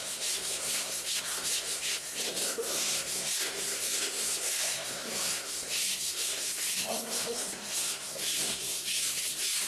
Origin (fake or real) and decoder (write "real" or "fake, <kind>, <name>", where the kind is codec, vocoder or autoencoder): fake, codec, SNAC